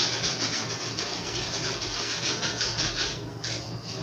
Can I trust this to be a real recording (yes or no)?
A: no